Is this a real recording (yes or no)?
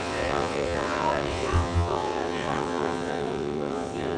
no